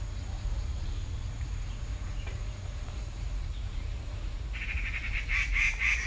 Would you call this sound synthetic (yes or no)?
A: yes